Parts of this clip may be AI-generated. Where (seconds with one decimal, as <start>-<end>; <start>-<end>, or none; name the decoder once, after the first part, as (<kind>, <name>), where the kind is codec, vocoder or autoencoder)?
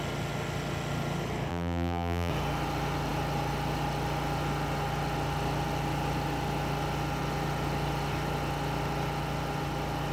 1.5-2.3 (vocoder, BigVGAN v2)